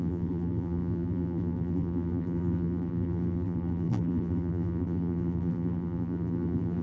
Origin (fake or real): fake